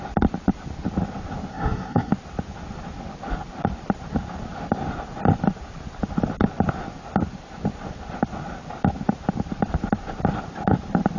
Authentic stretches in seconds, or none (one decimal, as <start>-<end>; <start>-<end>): 0.0-1.5; 2.1-11.2